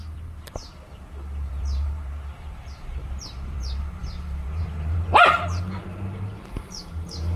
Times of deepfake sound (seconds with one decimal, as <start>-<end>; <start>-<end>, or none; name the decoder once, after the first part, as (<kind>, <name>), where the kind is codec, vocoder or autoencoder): 0.0-7.4 (vocoder, BigVGAN v2)